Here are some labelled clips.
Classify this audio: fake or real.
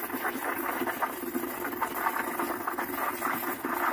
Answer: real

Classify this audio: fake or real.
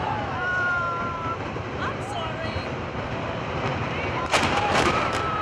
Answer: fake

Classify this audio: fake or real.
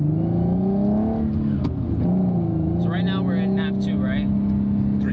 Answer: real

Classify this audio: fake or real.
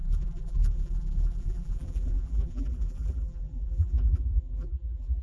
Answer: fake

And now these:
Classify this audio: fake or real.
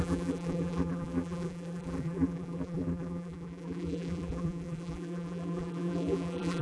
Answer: fake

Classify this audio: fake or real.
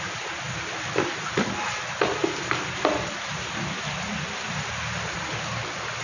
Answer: real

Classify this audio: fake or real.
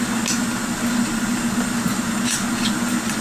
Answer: real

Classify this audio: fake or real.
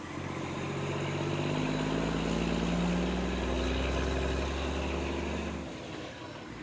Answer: real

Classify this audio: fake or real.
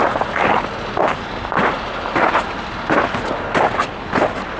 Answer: real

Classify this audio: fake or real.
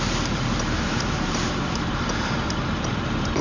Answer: fake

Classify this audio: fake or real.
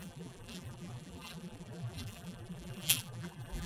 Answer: fake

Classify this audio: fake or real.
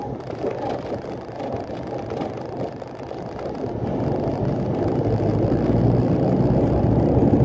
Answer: real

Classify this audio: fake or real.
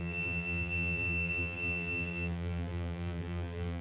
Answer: fake